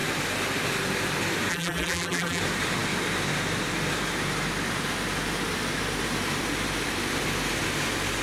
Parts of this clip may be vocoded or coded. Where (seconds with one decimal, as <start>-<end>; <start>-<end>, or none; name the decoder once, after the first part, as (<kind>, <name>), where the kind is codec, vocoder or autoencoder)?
1.5-2.4 (vocoder, BigVGAN v2)